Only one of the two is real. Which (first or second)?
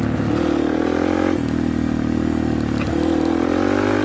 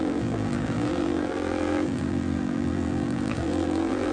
first